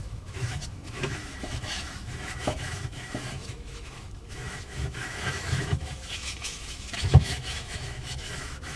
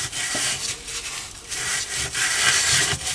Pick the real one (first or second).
second